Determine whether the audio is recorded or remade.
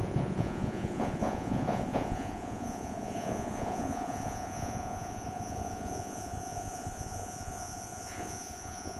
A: remade